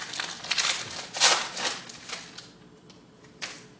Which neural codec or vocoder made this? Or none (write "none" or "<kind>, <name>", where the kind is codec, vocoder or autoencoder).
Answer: none